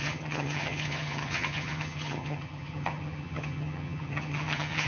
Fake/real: fake